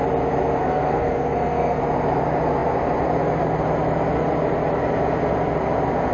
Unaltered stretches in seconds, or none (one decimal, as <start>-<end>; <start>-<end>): 0.0-0.6; 1.8-6.1